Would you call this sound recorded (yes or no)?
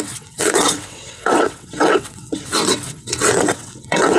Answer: no